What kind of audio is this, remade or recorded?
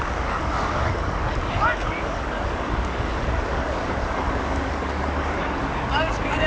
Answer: remade